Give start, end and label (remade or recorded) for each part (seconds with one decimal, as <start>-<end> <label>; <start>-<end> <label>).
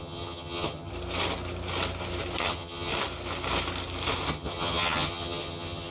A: 0.0-0.9 remade; 0.9-2.4 recorded; 2.4-2.9 remade; 2.9-4.3 recorded; 4.3-5.9 remade